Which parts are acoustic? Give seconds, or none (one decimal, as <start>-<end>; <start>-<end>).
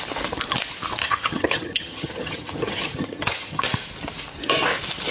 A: 0.0-1.0; 3.6-5.1